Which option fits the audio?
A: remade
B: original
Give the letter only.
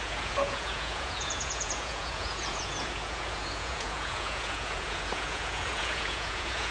A